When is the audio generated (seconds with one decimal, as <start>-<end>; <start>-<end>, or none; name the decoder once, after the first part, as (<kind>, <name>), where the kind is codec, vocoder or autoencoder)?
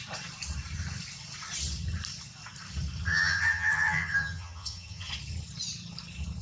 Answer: 3.1-5.1 (vocoder, HiFi-GAN)